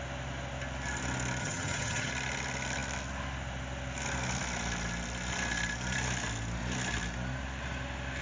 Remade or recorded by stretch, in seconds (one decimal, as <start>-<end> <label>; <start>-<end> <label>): 0.0-1.4 recorded; 1.4-2.1 remade; 2.1-8.2 recorded